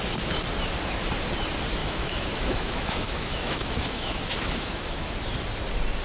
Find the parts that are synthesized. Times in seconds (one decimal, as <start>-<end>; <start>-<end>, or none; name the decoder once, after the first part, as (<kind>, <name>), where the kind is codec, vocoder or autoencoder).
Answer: 1.8-5.1 (autoencoder, DAC-VAE)